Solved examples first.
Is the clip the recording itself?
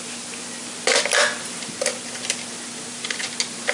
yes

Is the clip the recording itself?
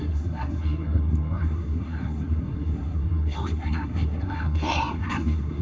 no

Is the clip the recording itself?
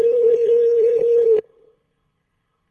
no